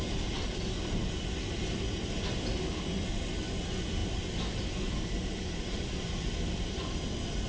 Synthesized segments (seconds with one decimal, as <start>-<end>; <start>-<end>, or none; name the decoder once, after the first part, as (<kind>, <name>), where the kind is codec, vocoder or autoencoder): none

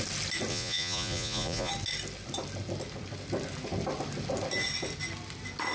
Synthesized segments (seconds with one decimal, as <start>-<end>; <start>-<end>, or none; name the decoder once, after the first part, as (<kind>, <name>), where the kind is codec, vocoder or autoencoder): 0.5-1.7 (vocoder, Vocos)